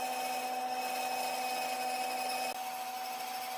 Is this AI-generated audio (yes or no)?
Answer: no